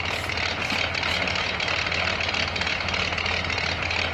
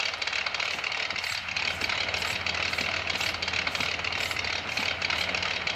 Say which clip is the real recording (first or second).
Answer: first